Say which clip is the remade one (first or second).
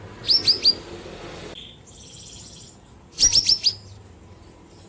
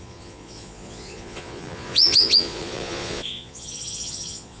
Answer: second